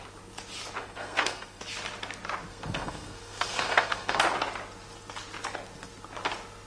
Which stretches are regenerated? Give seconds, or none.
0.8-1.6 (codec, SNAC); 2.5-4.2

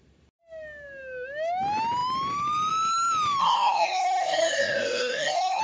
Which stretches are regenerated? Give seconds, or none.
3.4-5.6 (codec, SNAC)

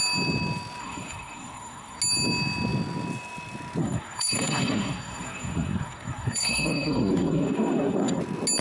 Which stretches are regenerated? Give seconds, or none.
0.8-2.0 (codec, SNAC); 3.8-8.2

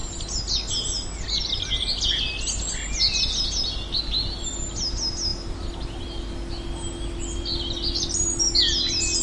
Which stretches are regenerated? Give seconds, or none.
none

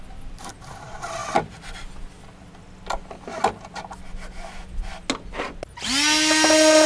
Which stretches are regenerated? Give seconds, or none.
none

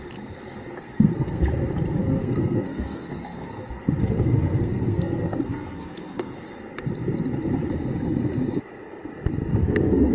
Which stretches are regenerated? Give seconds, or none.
0.8-1.4 (codec, SNAC); 2.0-3.6; 4.0-6.3; 9.5-10.1